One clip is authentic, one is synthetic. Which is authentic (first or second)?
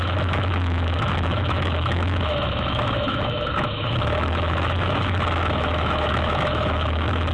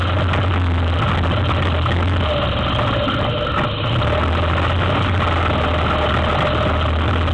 second